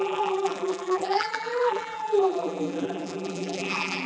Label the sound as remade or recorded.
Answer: remade